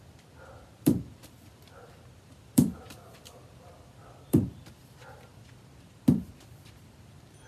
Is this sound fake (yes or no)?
yes